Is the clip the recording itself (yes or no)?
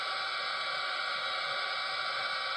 yes